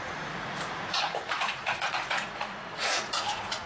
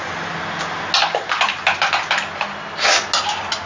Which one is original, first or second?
second